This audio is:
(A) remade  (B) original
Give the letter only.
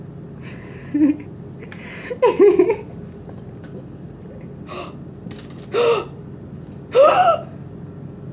B